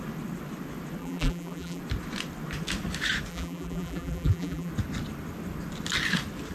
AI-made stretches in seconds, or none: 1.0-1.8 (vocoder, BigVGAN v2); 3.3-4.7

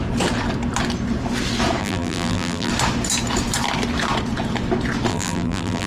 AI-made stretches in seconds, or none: 1.8-2.7 (vocoder, BigVGAN v2); 5.1-5.9